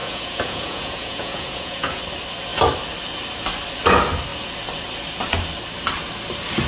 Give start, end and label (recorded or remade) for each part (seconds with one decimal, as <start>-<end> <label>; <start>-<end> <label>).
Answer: 0.0-2.0 remade; 2.0-6.7 recorded